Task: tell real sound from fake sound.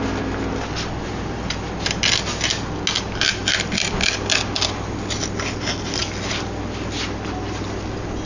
real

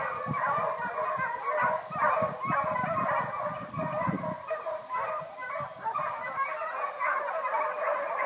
real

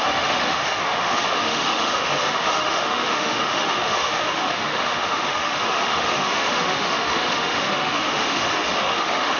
fake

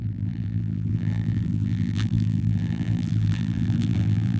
fake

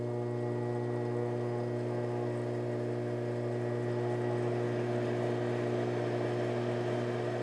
real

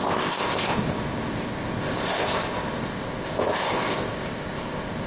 fake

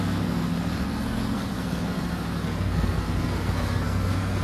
fake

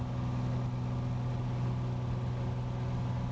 real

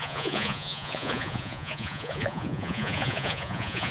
fake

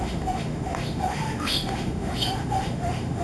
fake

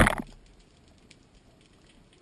real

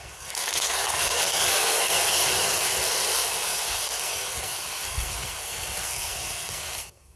fake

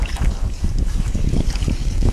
fake